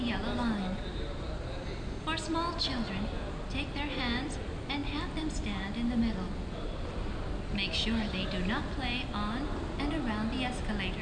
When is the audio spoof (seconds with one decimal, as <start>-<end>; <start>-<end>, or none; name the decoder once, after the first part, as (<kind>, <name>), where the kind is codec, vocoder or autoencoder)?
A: none